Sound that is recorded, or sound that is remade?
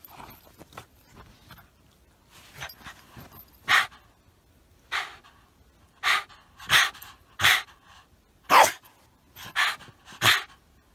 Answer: recorded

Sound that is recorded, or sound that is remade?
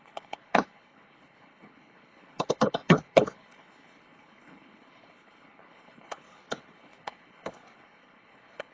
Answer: remade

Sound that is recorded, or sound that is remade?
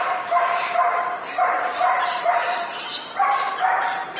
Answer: remade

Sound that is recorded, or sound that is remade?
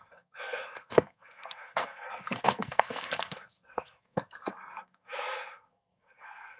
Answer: remade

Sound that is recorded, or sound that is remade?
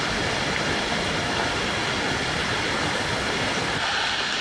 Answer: recorded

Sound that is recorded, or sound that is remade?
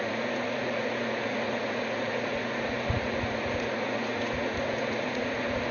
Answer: remade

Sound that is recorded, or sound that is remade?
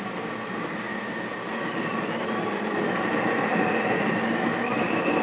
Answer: recorded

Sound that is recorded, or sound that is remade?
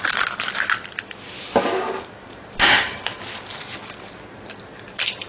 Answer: remade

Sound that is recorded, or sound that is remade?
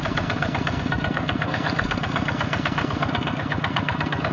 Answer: remade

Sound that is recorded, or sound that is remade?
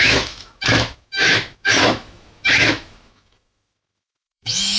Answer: remade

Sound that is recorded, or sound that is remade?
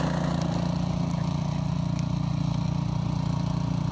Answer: recorded